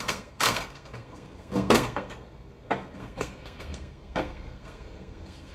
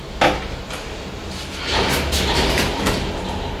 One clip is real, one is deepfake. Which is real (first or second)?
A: second